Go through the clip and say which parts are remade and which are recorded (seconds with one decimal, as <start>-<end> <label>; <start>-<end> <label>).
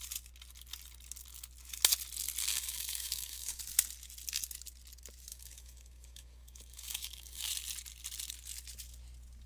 0.0-2.5 recorded; 2.5-3.6 remade; 3.6-5.3 recorded; 5.3-7.5 remade; 7.5-9.5 recorded